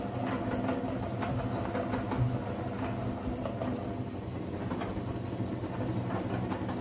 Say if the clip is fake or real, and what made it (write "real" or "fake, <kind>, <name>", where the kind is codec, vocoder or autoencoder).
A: real